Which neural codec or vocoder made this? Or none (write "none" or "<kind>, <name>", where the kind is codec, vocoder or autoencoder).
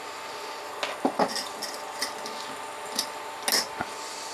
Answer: none